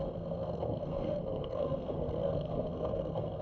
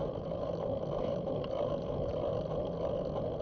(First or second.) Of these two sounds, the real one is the second